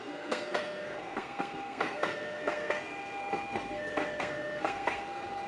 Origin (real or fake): fake